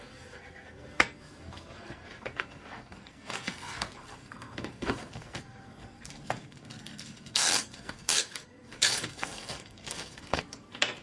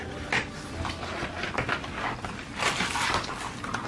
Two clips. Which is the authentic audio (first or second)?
second